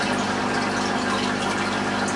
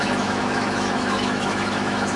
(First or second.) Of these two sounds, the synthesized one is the second